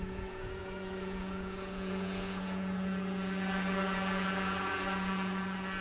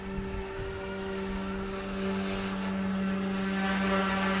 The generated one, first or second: first